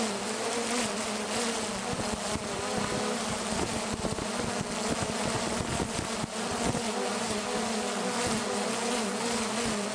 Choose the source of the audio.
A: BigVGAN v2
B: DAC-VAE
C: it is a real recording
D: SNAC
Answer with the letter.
C